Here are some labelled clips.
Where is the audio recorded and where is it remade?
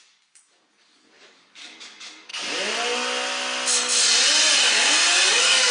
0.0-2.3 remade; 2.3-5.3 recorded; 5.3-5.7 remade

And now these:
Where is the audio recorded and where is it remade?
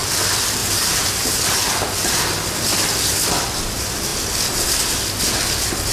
0.0-0.6 recorded; 0.6-1.7 remade; 1.7-5.9 recorded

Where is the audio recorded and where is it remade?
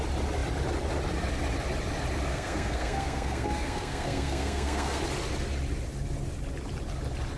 0.0-2.3 recorded; 2.3-5.0 remade; 5.0-7.4 recorded